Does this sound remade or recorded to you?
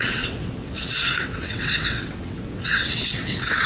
remade